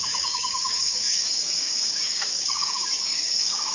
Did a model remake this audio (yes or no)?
yes